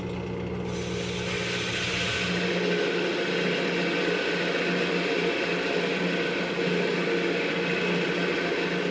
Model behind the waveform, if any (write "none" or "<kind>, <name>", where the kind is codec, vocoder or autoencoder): none